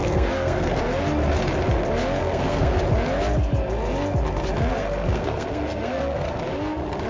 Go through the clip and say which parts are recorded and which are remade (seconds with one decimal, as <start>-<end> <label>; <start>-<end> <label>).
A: 0.0-0.8 remade; 0.8-2.2 recorded; 2.2-2.8 remade; 2.8-4.7 recorded; 4.7-6.4 remade; 6.4-7.1 recorded